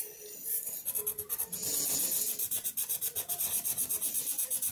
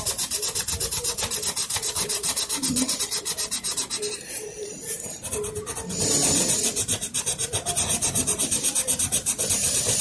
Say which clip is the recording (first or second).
first